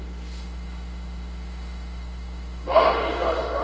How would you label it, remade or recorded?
remade